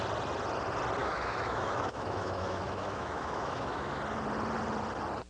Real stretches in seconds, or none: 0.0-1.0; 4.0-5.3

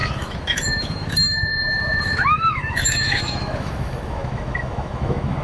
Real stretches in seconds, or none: none